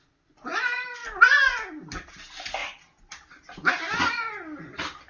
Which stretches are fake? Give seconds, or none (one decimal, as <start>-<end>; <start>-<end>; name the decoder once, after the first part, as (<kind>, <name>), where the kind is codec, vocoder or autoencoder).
none